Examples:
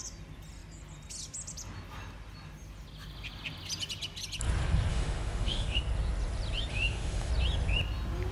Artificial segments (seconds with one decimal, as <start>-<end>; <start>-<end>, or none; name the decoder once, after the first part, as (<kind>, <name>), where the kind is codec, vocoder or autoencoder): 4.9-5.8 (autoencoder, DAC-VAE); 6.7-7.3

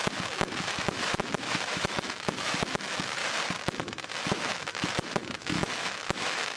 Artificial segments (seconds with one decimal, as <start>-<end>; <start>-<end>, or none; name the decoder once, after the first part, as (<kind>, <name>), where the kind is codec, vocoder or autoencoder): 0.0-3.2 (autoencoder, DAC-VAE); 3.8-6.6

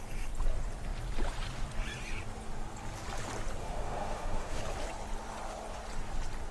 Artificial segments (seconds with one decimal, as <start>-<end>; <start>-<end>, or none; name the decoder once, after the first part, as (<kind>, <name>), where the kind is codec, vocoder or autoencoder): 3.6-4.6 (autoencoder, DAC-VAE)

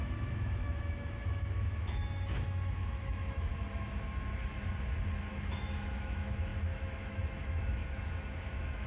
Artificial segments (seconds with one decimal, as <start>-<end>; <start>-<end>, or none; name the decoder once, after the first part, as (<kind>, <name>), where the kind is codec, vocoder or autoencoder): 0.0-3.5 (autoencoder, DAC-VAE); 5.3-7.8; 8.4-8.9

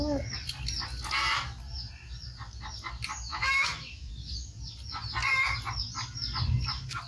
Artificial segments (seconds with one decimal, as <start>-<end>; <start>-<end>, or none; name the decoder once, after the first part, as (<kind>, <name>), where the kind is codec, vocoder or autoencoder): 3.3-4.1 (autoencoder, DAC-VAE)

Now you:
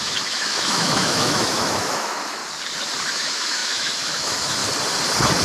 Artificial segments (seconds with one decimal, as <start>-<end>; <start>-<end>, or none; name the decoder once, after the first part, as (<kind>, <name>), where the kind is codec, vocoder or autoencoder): 0.0-2.4 (autoencoder, DAC-VAE); 3.1-4.6

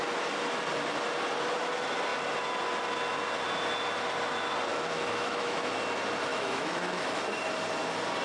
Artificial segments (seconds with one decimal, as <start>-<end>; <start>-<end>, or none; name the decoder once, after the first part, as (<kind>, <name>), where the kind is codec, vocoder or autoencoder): 4.7-5.7 (autoencoder, DAC-VAE); 6.3-7.2